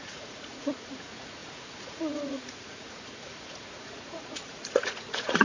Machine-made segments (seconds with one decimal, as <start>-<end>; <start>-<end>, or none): 0.0-5.4